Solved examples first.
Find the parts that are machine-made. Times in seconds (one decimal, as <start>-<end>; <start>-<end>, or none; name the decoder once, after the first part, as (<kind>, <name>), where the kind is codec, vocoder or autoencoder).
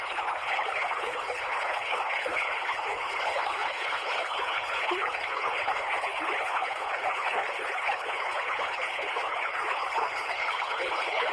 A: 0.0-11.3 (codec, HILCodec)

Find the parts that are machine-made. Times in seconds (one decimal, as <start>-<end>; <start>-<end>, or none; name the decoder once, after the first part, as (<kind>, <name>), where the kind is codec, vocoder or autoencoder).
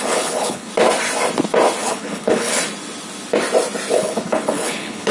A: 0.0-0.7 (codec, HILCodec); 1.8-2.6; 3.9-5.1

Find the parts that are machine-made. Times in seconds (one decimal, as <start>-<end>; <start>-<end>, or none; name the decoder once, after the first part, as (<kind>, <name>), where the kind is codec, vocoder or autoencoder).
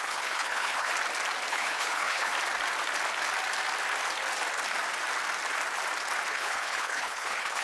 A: 0.0-0.9 (codec, HILCodec); 1.5-2.3; 6.3-7.6